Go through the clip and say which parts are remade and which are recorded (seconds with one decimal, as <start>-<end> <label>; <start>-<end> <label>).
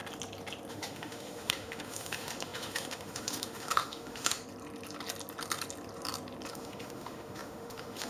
0.0-0.7 recorded; 0.7-4.4 remade; 4.4-6.5 recorded; 6.5-8.1 remade